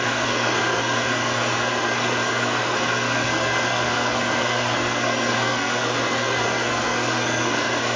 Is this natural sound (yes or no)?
no